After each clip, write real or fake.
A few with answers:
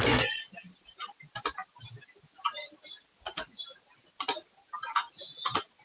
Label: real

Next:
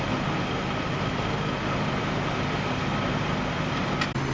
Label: real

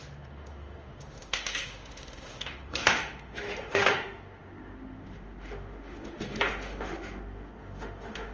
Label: fake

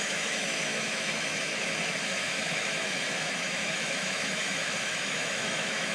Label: fake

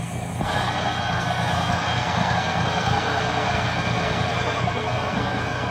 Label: fake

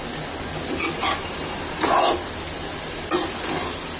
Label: real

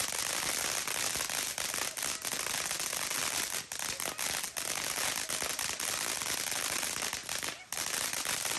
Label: real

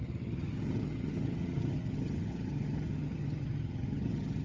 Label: fake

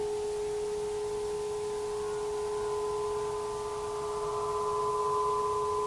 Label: real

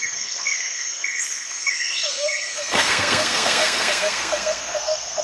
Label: fake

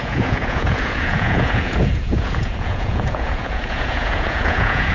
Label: fake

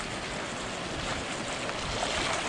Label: real